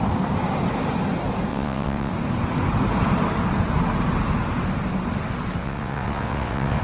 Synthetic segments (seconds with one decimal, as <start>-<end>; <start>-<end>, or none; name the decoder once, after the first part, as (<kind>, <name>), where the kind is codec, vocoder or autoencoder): 1.5-2.1 (vocoder, WaveNeXt); 5.6-6.8